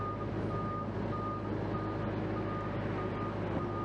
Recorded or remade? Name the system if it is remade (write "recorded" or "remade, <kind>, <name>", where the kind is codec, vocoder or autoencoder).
recorded